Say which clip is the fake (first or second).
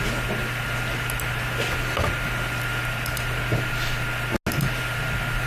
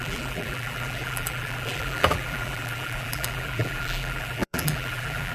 second